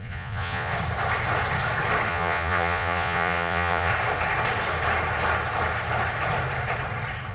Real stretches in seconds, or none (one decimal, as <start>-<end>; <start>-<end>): 0.7-2.1; 3.9-7.3